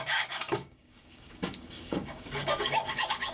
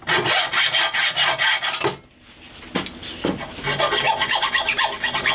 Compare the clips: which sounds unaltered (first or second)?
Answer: second